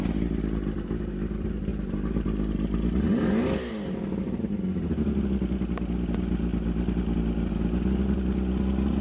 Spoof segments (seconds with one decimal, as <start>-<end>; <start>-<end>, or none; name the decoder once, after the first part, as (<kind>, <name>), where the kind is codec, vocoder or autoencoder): none